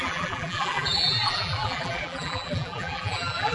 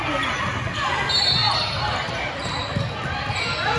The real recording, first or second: second